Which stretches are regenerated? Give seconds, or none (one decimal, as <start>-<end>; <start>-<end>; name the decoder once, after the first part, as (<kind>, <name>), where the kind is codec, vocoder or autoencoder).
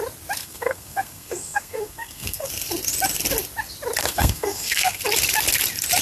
0.4-2.5 (codec, SNAC); 4.0-5.0